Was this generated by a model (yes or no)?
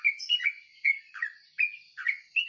yes